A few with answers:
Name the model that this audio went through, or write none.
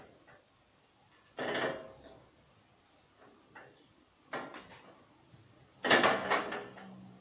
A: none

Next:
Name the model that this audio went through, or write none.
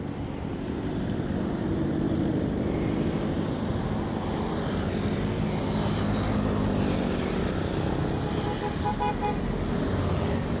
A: none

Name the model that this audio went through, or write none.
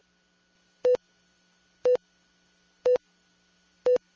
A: none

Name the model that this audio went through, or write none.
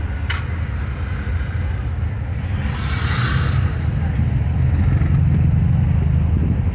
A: none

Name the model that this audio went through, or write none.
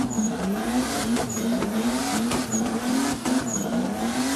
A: vocoder, BigVGAN v2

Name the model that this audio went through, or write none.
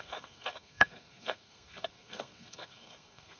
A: codec, SNAC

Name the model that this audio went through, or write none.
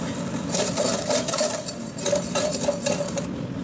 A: none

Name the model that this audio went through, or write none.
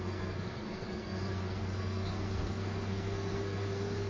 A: codec, SNAC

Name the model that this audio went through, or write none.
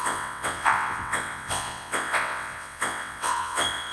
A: vocoder, WaveNeXt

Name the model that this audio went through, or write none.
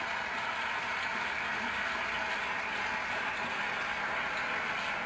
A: none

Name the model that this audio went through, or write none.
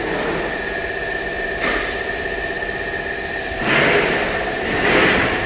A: none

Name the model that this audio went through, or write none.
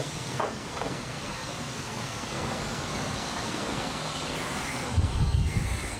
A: codec, SNAC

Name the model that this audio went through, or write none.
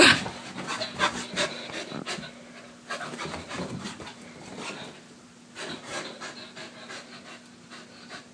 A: none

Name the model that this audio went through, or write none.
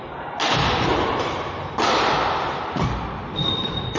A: none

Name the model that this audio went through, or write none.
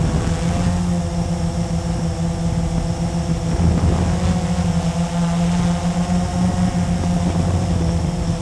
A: none